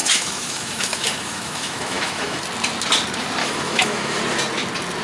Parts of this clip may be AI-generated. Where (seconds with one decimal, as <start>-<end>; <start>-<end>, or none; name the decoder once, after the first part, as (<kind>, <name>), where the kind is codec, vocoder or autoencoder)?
0.0-2.4 (autoencoder, DAC-VAE); 3.4-4.2